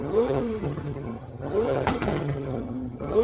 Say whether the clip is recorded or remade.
remade